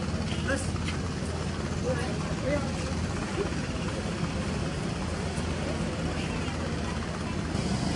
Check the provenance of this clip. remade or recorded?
recorded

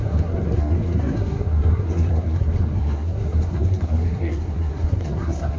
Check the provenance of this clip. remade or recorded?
remade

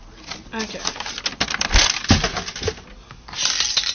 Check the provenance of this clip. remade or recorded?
recorded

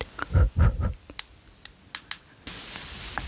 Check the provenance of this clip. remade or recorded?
recorded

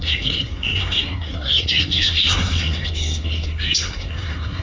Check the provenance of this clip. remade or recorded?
remade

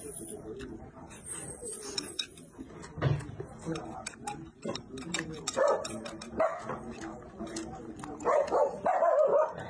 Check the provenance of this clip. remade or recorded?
recorded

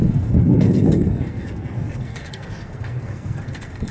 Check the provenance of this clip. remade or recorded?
remade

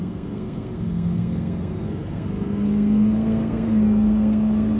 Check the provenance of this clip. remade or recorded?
remade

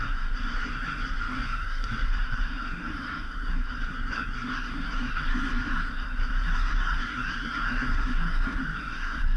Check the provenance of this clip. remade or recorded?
remade